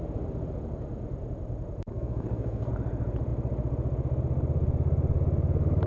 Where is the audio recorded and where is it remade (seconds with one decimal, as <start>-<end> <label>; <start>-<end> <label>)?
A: 0.0-1.9 recorded; 1.9-2.7 remade; 2.7-5.9 recorded